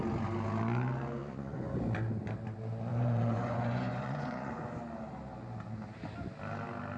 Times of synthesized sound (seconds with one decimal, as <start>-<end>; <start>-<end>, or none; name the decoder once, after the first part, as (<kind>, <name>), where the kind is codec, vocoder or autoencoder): 1.2-1.8 (vocoder, Vocos); 2.9-4.8

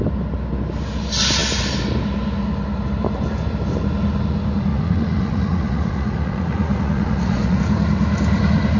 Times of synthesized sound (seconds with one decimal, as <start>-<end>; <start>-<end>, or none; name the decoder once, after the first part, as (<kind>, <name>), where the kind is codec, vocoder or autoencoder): 4.7-7.6 (vocoder, Vocos)

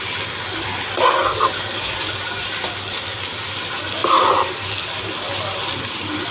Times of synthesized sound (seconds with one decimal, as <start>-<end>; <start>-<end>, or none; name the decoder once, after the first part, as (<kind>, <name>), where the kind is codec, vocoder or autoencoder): 4.0-6.3 (vocoder, BigVGAN v2)

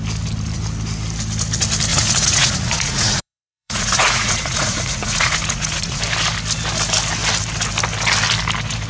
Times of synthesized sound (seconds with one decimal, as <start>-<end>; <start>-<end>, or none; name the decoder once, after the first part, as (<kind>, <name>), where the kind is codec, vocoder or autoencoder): 1.9-6.0 (vocoder, Vocos)